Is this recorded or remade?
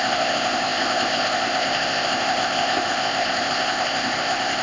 remade